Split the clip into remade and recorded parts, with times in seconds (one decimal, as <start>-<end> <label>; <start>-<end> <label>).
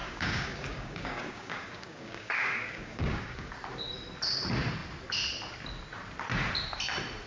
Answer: 0.0-3.5 remade; 3.5-7.3 recorded